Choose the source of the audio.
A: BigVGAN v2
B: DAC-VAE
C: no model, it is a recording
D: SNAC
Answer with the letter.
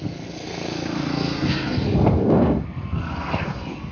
D